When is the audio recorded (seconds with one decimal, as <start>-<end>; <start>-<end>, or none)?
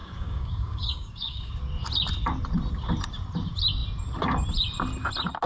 1.5-5.5